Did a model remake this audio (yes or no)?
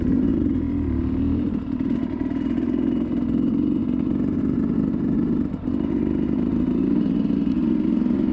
yes